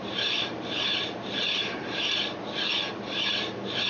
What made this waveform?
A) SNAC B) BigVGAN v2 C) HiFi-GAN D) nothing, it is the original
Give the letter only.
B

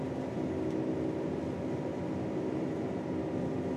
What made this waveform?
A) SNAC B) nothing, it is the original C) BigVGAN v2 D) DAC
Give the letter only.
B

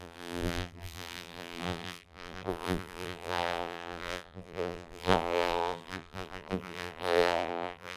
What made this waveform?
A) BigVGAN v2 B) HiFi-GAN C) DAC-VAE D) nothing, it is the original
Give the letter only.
A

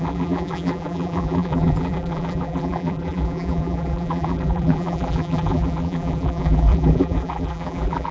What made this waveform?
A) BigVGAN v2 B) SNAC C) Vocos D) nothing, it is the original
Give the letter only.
A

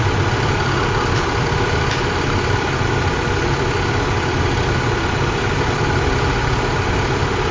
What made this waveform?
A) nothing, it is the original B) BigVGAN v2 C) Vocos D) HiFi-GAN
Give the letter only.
B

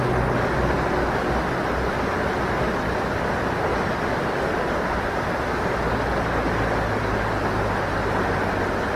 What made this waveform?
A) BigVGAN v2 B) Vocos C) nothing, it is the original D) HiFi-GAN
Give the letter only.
C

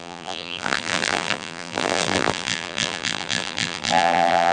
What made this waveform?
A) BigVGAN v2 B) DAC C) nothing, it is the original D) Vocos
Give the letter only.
A